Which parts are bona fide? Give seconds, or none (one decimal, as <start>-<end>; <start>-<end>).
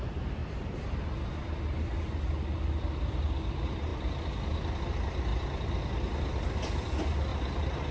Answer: 0.0-0.4; 1.0-7.3